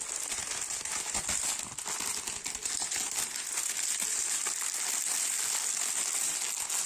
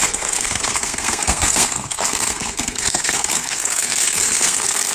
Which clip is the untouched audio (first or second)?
first